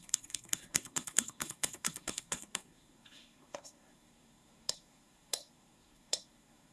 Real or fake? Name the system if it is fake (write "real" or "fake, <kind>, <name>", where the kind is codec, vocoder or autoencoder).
fake, codec, SNAC